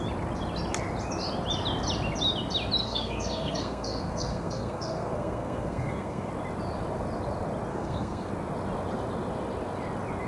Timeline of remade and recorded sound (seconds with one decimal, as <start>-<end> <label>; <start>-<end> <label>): 0.0-2.8 recorded; 2.8-6.3 remade; 6.3-7.7 recorded; 7.7-8.3 remade; 8.3-10.3 recorded

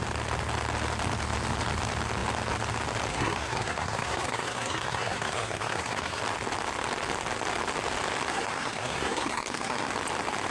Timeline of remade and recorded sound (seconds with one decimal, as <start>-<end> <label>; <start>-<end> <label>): 0.0-3.1 recorded; 3.1-6.2 remade; 6.2-8.3 recorded; 8.3-9.9 remade; 9.9-10.5 recorded

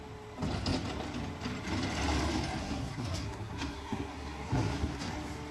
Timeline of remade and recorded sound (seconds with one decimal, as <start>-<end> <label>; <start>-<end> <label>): 0.0-2.6 recorded; 2.6-5.1 remade; 5.1-5.5 recorded

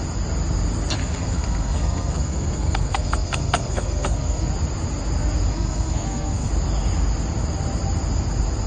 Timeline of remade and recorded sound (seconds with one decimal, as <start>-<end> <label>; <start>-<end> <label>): 0.0-1.0 recorded; 1.0-4.5 remade; 4.5-5.5 recorded; 5.5-6.5 remade; 6.5-8.7 recorded